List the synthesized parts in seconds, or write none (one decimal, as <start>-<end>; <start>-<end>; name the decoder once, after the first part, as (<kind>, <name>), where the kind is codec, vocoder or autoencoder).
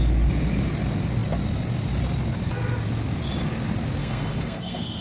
4.0-5.0 (codec, SNAC)